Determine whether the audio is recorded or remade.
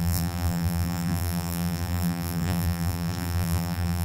remade